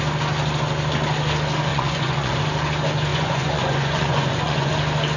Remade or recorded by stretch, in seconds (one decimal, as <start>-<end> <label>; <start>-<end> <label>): 0.0-1.7 recorded; 1.7-2.4 remade; 2.4-3.1 recorded; 3.1-4.7 remade; 4.7-5.2 recorded